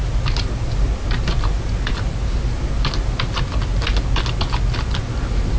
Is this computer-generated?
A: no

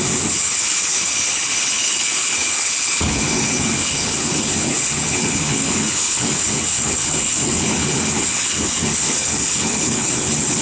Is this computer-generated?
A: yes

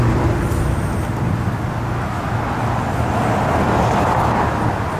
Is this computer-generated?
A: no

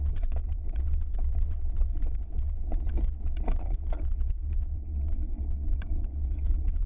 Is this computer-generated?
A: yes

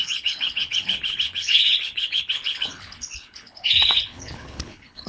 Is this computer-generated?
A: yes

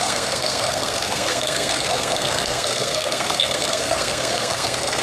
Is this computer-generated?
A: yes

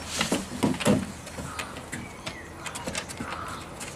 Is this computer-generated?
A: no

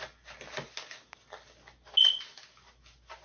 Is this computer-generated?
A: no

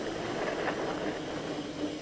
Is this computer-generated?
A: no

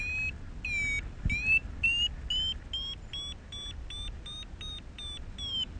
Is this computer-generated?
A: no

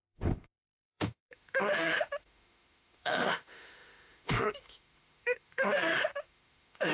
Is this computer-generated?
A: yes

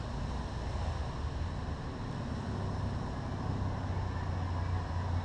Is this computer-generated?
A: no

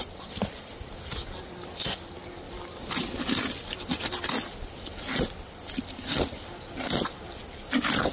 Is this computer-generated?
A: no